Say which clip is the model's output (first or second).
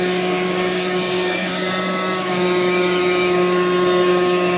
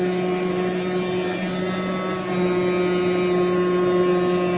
first